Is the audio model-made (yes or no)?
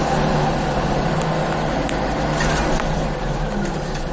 no